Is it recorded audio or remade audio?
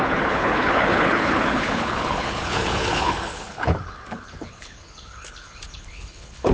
remade